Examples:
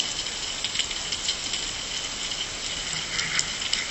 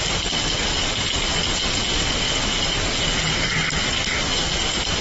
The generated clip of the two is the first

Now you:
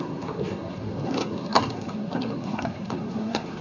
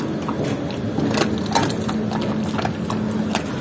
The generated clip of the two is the first